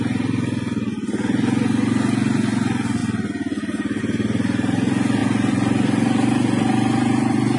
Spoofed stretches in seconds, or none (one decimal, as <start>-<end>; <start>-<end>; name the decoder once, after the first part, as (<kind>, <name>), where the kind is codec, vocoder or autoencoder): 5.2-7.6 (vocoder, BigVGAN v2)